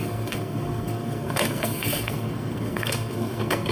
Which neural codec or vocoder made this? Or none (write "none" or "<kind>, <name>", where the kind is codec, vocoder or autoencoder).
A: codec, SNAC